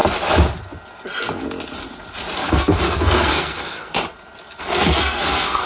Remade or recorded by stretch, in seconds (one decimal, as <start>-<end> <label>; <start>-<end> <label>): 0.0-2.5 recorded; 2.5-4.0 remade; 4.0-4.6 recorded; 4.6-5.7 remade